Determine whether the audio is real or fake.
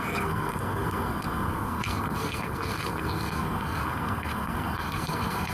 fake